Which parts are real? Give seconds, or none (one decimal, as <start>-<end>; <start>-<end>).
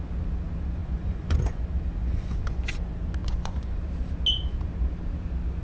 0.0-0.8; 1.6-2.0; 2.8-3.2; 3.8-5.6